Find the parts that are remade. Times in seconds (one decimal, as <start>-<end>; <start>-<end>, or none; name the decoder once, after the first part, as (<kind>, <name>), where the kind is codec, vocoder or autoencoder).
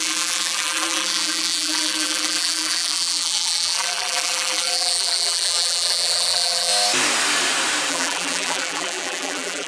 0.0-6.7 (vocoder, BigVGAN v2); 7.9-9.7